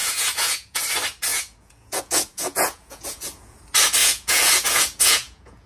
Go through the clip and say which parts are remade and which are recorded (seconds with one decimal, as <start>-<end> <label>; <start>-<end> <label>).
0.0-0.8 remade; 0.8-1.3 recorded; 1.3-3.6 remade; 3.6-4.0 recorded; 4.0-5.7 remade